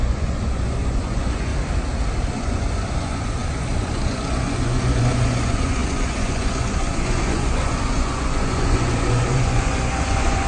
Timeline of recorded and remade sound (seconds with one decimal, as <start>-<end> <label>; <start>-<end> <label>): 0.0-1.5 remade; 1.5-2.3 recorded; 2.3-10.5 remade